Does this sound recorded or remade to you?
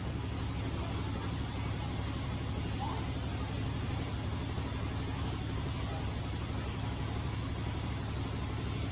recorded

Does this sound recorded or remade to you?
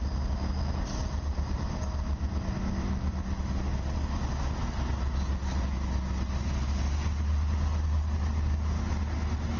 recorded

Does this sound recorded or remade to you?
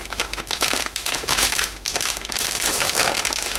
remade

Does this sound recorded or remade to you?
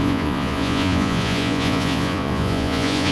remade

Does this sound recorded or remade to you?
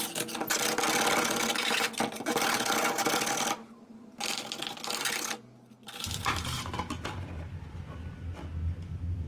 recorded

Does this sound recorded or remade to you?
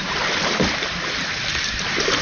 recorded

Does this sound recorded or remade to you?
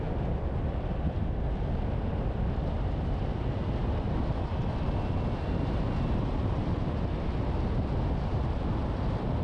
recorded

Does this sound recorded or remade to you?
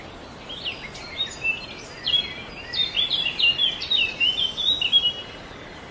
recorded